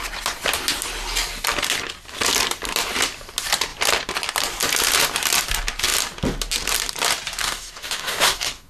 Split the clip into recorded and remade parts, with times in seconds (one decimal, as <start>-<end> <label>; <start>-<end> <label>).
0.0-7.4 recorded; 7.4-8.7 remade